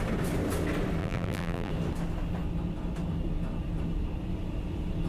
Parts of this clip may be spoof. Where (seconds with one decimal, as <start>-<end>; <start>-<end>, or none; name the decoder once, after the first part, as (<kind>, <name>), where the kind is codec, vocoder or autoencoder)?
1.0-1.7 (vocoder, BigVGAN v2)